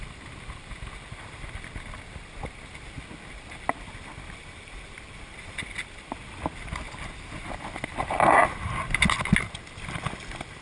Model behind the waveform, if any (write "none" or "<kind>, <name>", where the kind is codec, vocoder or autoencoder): none